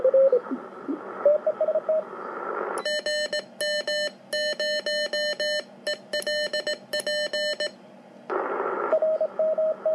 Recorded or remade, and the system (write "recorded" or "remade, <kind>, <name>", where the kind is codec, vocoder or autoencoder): recorded